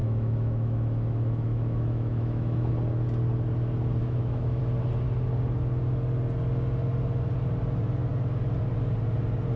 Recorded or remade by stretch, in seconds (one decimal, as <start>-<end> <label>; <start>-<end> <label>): 0.0-2.7 remade; 2.7-4.0 recorded; 4.0-4.6 remade; 4.6-9.6 recorded